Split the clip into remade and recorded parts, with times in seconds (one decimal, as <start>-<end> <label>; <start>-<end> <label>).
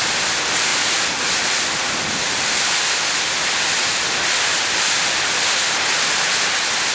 0.0-0.7 recorded; 0.7-1.3 remade; 1.3-6.9 recorded